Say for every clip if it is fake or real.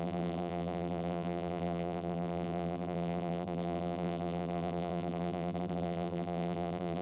fake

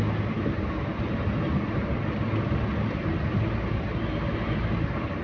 real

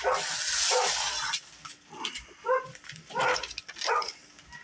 real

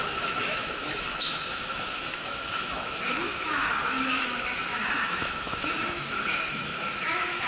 fake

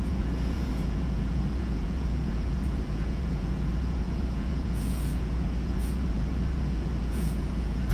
fake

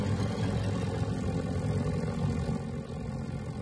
real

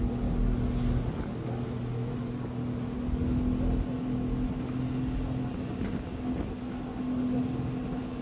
real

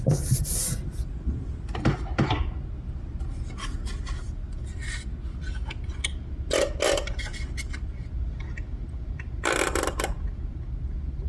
real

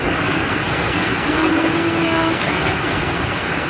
fake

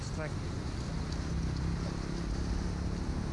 real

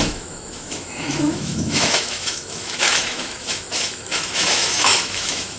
fake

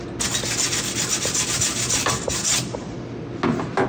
real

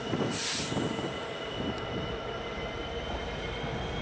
real